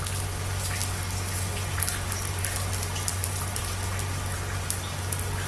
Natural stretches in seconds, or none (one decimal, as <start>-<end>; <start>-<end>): 0.0-3.1; 3.6-5.5